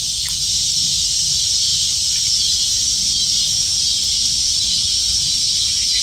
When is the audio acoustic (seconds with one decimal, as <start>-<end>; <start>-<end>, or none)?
0.0-6.0